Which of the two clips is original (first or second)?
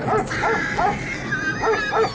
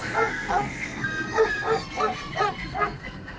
first